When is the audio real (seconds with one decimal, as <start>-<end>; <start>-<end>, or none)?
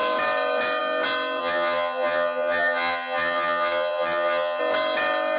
0.0-1.4; 4.6-5.4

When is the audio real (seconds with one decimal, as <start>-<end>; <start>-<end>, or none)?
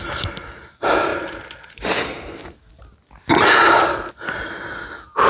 0.0-5.3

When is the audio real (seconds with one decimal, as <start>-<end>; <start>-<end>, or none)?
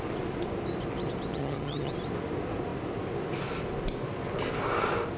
0.0-1.3; 1.9-5.2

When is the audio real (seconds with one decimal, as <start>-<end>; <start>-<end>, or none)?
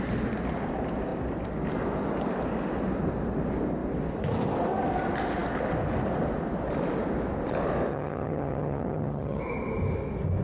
0.0-7.9; 9.4-10.4